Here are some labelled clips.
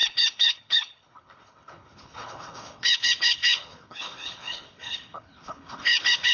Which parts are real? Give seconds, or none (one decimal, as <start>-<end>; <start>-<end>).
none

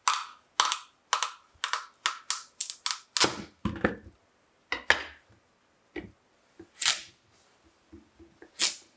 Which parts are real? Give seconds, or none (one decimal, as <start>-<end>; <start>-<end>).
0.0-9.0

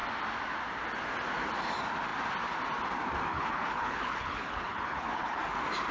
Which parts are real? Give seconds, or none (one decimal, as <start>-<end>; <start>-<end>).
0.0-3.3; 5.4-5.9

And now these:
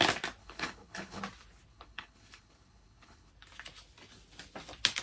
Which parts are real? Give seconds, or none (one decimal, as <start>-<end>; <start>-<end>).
0.0-0.4; 1.2-1.7; 3.3-5.0

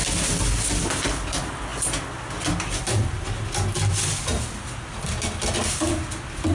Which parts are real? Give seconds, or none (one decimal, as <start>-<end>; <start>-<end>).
0.0-6.5